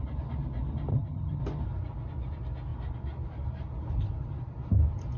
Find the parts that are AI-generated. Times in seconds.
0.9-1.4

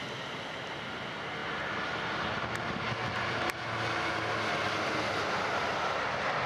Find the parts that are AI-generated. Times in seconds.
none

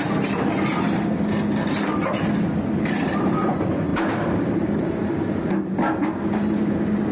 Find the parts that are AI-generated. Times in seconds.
3.9-5.5

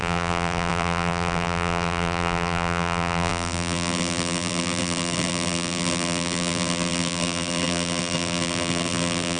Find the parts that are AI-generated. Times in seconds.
0.0-9.4

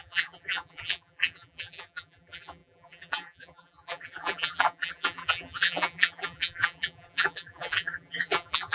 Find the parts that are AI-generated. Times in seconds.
0.0-8.7

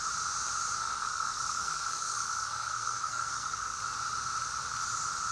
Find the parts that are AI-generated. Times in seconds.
0.8-3.8